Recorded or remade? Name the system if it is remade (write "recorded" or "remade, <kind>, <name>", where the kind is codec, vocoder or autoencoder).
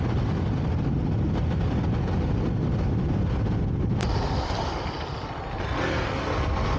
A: recorded